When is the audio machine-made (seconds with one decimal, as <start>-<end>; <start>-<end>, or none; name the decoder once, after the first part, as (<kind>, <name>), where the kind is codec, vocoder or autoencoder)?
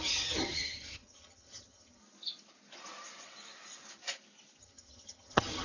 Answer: 0.0-2.0 (vocoder, HiFi-GAN); 4.6-5.6